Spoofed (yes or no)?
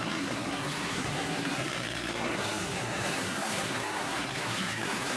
yes